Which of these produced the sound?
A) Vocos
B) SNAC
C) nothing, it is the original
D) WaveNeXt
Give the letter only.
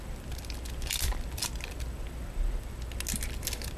C